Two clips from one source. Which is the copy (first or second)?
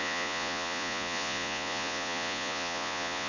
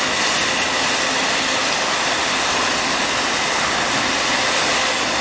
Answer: first